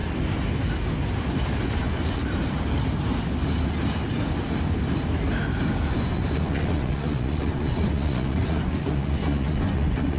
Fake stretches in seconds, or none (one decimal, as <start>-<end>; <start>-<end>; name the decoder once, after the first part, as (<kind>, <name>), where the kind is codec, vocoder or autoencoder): 1.6-2.2 (vocoder, Vocos); 5.9-10.2